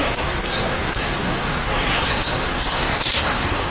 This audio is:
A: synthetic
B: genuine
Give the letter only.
A